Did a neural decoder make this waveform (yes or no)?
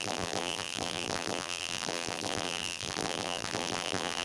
yes